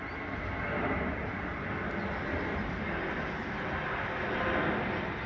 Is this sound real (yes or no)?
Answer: yes